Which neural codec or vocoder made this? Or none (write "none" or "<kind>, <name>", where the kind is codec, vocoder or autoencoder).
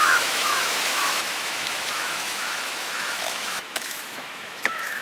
autoencoder, DAC-VAE